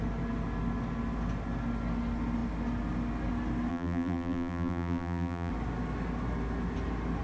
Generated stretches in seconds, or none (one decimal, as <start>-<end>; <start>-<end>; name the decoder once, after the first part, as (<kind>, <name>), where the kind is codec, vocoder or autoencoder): 3.7-5.5 (vocoder, BigVGAN v2)